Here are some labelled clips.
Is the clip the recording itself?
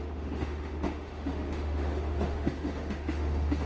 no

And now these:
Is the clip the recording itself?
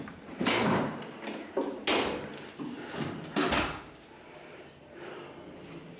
yes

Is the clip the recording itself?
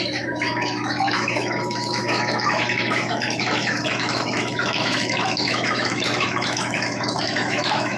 no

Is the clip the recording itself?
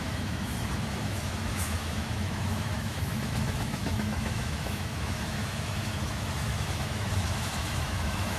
no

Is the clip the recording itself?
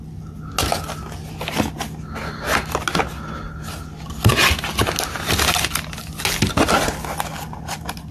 yes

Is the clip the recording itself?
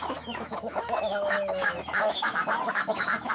no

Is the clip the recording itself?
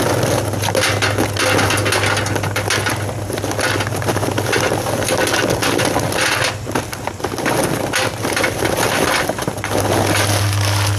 yes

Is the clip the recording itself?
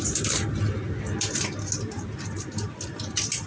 yes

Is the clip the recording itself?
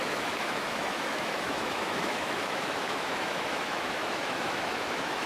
no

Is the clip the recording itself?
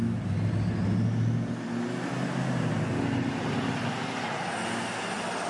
yes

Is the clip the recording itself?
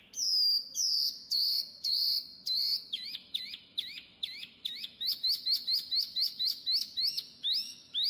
no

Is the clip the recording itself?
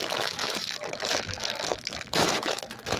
no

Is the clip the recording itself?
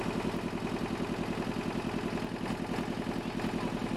yes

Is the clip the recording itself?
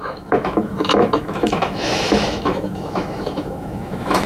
no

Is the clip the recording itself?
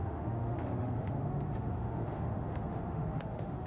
no